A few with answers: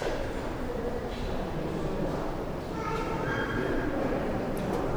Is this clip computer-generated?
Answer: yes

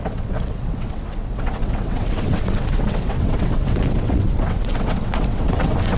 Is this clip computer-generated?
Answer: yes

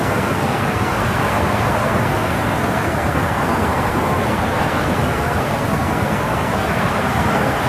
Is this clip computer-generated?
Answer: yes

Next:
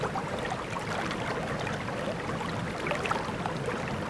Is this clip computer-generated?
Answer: no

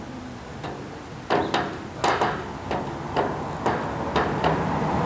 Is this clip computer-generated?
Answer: no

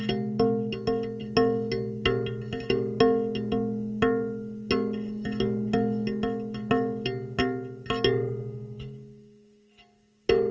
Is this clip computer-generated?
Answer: no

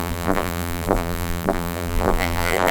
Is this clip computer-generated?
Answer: yes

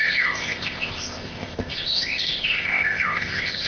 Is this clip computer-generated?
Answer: yes